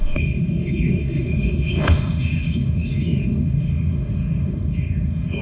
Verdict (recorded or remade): remade